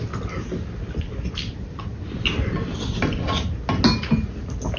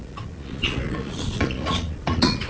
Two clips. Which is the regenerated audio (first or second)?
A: second